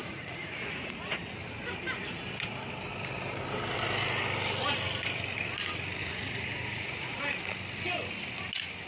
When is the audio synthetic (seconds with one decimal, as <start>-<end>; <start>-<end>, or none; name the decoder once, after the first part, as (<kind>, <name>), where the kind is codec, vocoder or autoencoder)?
0.0-1.3 (vocoder, Vocos); 6.0-7.2